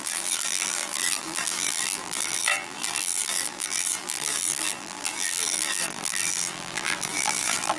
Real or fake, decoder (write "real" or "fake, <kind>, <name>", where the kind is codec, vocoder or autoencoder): fake, vocoder, BigVGAN v2